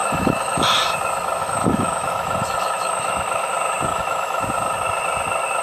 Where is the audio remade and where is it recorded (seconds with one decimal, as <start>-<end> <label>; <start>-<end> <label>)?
0.0-0.8 remade; 0.8-1.4 recorded; 1.4-3.5 remade; 3.5-3.9 recorded; 3.9-4.4 remade; 4.4-5.6 recorded